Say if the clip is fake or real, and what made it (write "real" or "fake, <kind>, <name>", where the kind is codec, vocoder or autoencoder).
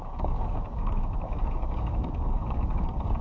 fake, codec, DAC